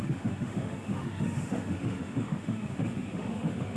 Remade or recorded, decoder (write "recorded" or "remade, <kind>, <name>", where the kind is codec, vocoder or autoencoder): remade, autoencoder, DAC-VAE